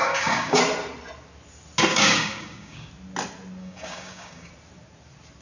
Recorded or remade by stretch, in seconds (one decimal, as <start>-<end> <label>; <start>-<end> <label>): 0.0-0.6 remade; 0.6-1.9 recorded; 1.9-2.9 remade; 2.9-3.6 recorded; 3.6-4.5 remade; 4.5-5.4 recorded